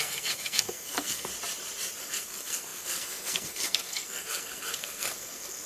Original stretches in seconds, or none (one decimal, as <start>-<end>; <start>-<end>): 1.3-2.0